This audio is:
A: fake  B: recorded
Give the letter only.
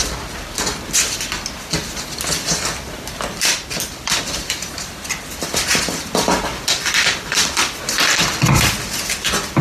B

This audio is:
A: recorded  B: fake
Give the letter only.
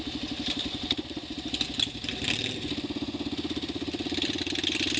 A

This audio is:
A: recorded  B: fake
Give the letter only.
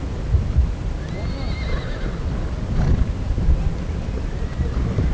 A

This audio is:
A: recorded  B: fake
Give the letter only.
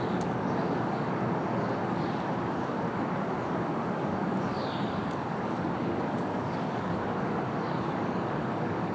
B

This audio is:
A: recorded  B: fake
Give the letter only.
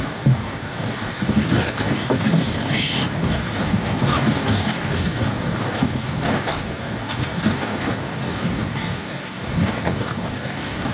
B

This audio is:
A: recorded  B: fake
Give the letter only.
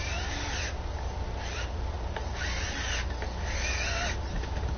A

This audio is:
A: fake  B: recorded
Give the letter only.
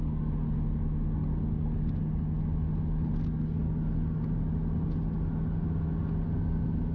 B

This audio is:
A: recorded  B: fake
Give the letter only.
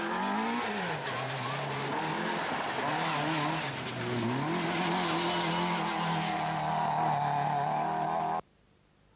A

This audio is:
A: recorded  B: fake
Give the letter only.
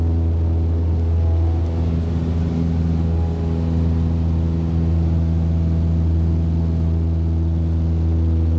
A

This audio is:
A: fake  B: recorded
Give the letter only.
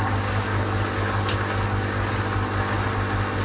B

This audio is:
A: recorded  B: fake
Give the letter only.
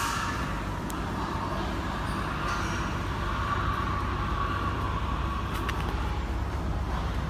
A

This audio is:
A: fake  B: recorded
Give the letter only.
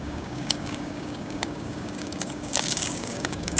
A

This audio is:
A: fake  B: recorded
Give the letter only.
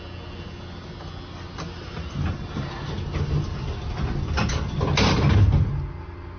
B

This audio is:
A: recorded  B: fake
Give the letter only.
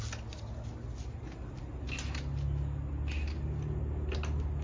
A